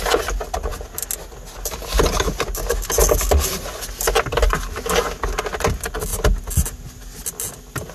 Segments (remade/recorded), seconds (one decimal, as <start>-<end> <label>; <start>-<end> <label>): 0.0-7.9 recorded